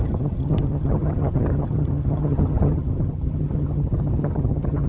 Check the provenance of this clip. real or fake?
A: fake